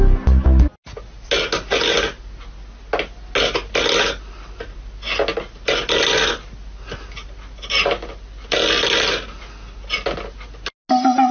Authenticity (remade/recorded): recorded